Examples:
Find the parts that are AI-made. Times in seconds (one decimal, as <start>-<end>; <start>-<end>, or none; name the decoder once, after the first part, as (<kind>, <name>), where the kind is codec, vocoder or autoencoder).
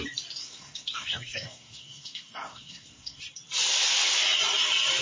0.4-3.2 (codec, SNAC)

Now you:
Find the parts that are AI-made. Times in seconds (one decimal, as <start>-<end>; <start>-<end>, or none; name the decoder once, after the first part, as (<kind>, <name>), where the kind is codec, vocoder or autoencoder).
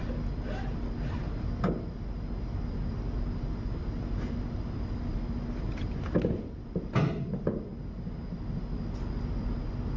none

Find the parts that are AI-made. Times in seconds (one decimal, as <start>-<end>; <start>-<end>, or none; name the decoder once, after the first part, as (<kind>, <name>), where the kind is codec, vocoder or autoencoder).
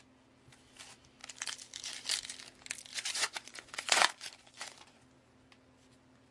2.9-5.0 (vocoder, Vocos)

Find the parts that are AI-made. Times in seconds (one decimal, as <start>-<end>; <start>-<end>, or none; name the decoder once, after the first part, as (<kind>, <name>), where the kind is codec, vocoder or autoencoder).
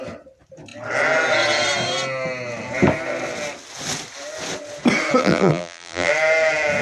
5.2-6.1 (vocoder, BigVGAN v2)